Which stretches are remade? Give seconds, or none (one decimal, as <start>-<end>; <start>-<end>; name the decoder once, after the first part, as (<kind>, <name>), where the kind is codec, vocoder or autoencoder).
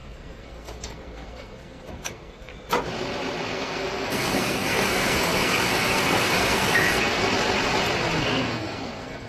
0.0-2.5 (codec, SNAC); 3.4-7.2; 8.2-9.3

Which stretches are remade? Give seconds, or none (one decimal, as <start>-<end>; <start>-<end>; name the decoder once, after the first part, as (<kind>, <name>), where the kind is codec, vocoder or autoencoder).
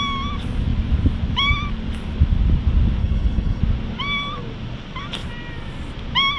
3.0-3.6 (codec, HILCodec)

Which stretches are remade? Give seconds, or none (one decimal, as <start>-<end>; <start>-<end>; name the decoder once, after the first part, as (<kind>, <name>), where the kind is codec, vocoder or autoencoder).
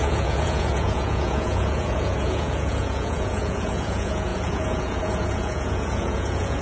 0.0-6.6 (vocoder, Vocos)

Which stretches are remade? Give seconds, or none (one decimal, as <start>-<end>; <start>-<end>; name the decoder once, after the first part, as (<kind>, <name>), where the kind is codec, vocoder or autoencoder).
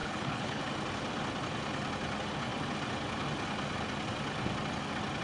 0.0-0.6 (codec, HILCodec)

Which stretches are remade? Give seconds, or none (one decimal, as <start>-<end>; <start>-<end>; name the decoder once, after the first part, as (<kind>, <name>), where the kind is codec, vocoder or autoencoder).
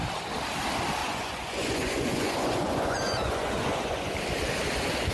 1.0-4.1 (vocoder, Vocos)